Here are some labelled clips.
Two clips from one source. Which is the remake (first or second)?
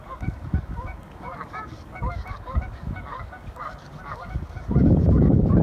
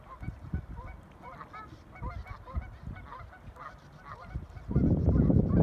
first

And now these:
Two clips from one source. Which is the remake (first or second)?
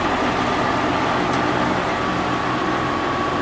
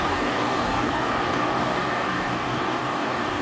second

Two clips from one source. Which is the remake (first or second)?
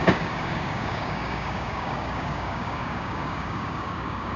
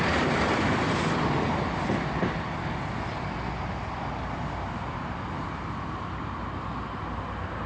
first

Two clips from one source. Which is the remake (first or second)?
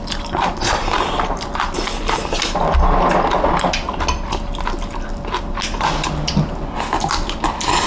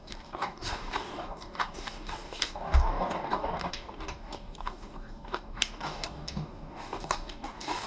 second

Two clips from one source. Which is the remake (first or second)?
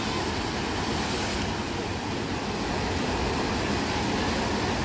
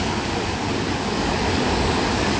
second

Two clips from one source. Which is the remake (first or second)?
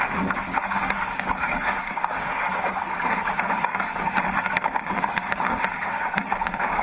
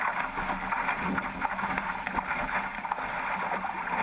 first